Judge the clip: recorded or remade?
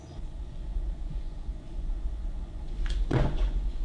remade